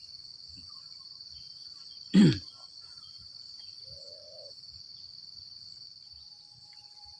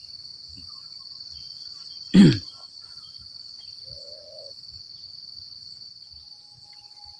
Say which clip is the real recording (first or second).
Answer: second